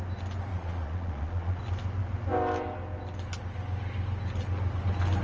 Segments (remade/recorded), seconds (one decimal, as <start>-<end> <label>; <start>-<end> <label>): 0.0-0.5 recorded; 0.5-1.6 remade; 1.6-5.2 recorded

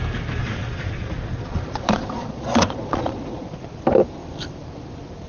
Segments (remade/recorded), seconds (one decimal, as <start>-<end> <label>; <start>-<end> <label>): 0.0-0.4 recorded; 0.4-3.6 remade; 3.6-5.3 recorded

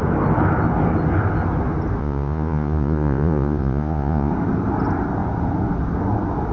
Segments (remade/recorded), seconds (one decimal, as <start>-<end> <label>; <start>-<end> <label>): 0.0-2.0 recorded; 2.0-4.3 remade; 4.3-6.5 recorded

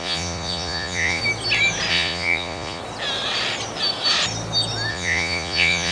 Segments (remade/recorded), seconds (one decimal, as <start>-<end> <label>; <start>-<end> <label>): 0.0-1.2 remade; 1.2-1.9 recorded; 1.9-2.8 remade; 2.8-4.9 recorded; 4.9-5.9 remade

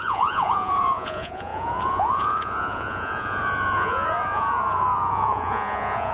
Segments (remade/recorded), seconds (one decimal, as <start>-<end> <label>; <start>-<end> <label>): 0.0-6.1 remade

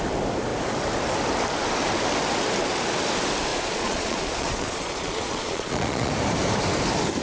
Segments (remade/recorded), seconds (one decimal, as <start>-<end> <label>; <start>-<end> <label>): 0.0-3.5 recorded; 3.5-6.1 remade; 6.1-7.2 recorded

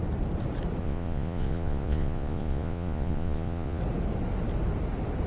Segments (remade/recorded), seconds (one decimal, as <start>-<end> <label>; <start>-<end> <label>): 0.0-0.8 recorded; 0.8-3.8 remade; 3.8-5.3 recorded

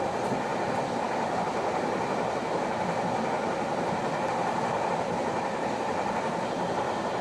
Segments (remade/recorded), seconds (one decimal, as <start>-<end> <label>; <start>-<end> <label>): 0.0-7.2 recorded